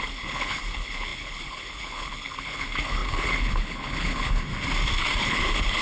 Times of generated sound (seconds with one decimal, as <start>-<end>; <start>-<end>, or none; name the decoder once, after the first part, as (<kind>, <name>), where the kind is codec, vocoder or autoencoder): 0.0-4.5 (codec, HILCodec); 5.2-5.8

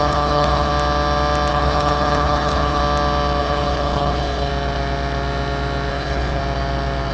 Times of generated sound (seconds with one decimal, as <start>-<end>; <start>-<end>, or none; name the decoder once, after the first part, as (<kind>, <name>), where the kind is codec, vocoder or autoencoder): 0.0-0.7 (codec, HILCodec); 1.5-2.8; 3.4-4.5; 5.9-6.4

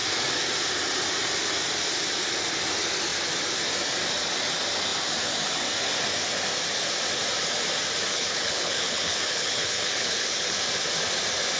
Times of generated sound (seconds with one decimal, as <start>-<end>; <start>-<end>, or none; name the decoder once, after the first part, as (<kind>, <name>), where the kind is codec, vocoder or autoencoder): 8.1-10.6 (codec, HILCodec)

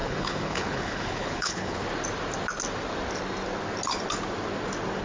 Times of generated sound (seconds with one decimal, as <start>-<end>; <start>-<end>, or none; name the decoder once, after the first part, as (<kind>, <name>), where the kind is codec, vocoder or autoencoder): 0.0-1.8 (codec, HILCodec)

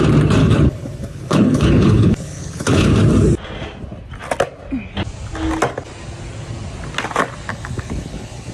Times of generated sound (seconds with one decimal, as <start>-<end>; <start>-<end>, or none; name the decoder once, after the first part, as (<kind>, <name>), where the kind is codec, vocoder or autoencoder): 0.4-2.9 (codec, HILCodec); 7.5-8.5

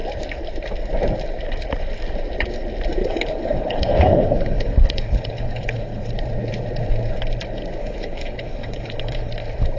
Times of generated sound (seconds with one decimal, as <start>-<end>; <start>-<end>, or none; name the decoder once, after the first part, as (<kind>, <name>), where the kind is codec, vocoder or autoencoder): 3.0-6.1 (codec, HILCodec); 7.8-9.3

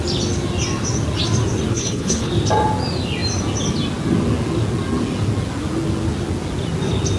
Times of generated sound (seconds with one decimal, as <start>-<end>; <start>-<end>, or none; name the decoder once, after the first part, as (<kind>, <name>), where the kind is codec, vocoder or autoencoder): 1.7-2.3 (codec, HILCodec)